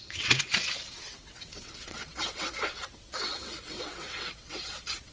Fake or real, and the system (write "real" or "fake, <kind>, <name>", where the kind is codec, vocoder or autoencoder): fake, vocoder, WaveNeXt